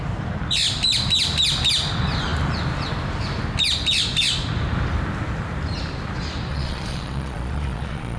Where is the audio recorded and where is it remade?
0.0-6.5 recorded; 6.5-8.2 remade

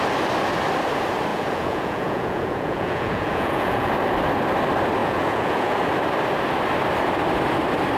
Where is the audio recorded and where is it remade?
0.0-1.3 recorded; 1.3-3.9 remade; 3.9-5.0 recorded; 5.0-5.8 remade; 5.8-8.0 recorded

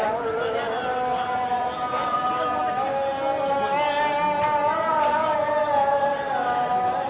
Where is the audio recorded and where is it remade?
0.0-1.1 recorded; 1.1-2.6 remade; 2.6-4.6 recorded; 4.6-6.0 remade; 6.0-7.1 recorded